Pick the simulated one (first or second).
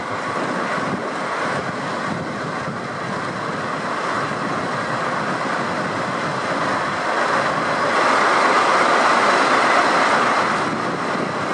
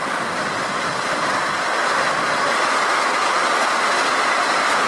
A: second